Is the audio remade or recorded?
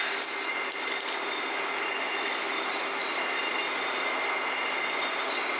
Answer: recorded